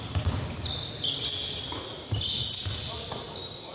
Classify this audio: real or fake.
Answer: real